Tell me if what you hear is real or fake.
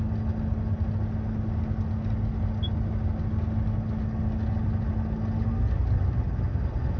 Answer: real